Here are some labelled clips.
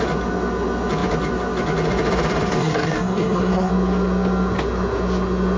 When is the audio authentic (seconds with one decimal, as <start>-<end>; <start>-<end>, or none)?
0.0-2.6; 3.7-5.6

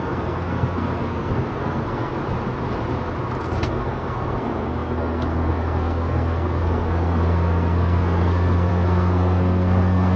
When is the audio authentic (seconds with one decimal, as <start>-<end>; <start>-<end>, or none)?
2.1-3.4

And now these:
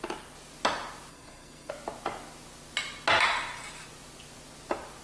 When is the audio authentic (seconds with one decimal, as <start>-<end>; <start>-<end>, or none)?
0.0-1.1; 1.7-5.0

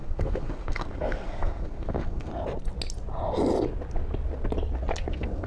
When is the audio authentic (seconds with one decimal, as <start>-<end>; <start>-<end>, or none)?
2.3-5.1

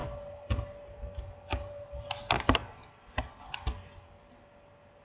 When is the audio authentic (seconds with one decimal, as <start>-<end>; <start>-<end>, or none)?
0.0-5.0

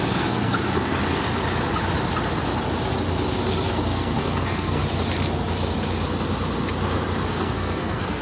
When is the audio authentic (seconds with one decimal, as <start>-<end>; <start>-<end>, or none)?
1.0-3.7; 4.8-7.3